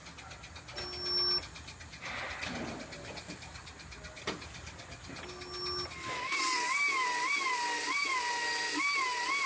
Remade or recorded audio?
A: recorded